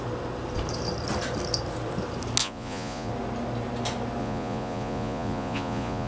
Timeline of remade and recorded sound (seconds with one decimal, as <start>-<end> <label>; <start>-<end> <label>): 0.0-2.4 recorded; 2.4-3.1 remade; 3.1-4.2 recorded; 4.2-6.1 remade

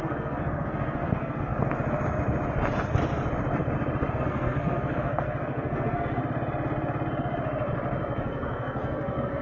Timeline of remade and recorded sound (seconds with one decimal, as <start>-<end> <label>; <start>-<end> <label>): 0.0-1.5 remade; 1.5-4.1 recorded; 4.1-6.2 remade; 6.2-8.2 recorded; 8.2-9.4 remade

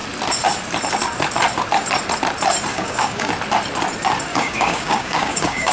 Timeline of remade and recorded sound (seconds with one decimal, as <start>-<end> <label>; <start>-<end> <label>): 0.0-2.7 recorded; 2.7-3.3 remade; 3.3-4.3 recorded; 4.3-5.7 remade